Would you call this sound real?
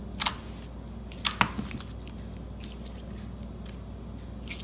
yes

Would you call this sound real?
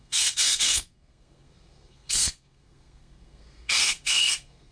no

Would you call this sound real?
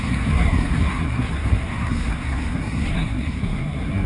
no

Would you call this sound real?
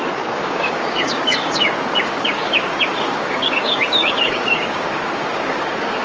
no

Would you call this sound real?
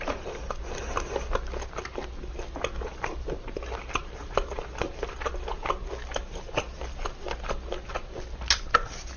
yes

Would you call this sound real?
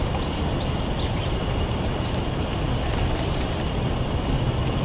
no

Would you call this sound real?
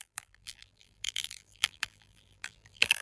no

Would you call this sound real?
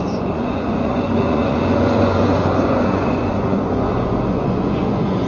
no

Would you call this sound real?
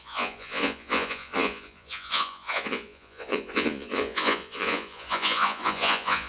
no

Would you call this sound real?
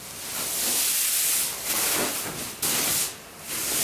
yes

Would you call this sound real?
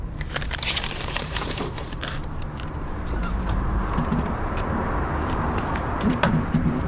no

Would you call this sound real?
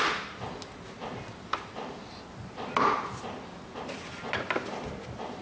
yes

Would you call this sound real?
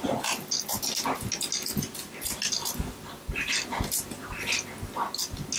yes